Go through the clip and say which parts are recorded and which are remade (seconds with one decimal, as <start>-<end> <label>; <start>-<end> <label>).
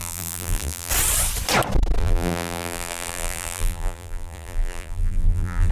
0.0-0.9 remade; 0.9-2.0 recorded; 2.0-5.7 remade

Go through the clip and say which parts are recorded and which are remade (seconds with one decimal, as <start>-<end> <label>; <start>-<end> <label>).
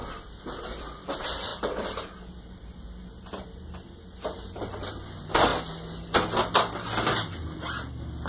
0.0-0.8 recorded; 0.8-5.5 remade; 5.5-7.9 recorded; 7.9-8.3 remade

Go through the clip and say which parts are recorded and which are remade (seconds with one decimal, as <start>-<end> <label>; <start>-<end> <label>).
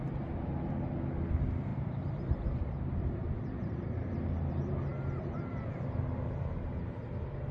0.0-1.7 recorded; 1.7-4.1 remade; 4.1-7.5 recorded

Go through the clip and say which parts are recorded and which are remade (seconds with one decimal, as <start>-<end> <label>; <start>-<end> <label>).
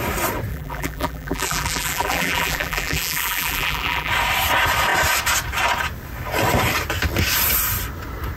0.0-0.5 recorded; 0.5-4.1 remade; 4.1-8.4 recorded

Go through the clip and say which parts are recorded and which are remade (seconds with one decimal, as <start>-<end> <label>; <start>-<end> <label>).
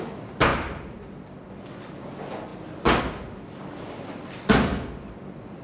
0.0-5.6 recorded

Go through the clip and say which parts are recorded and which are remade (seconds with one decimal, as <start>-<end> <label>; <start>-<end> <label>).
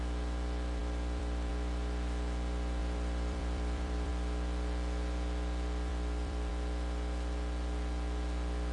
0.0-0.8 recorded; 0.8-1.5 remade; 1.5-2.8 recorded; 2.8-4.1 remade; 4.1-5.9 recorded; 5.9-6.5 remade; 6.5-8.7 recorded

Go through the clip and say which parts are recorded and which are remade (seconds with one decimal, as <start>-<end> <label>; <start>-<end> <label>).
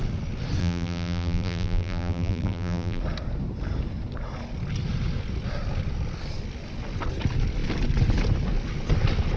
0.0-0.6 recorded; 0.6-3.0 remade; 3.0-9.4 recorded